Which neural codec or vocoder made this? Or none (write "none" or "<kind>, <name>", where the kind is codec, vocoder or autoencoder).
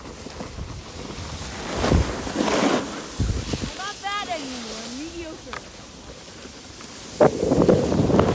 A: none